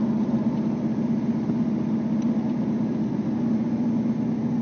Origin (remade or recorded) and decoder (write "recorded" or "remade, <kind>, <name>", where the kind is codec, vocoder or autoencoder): recorded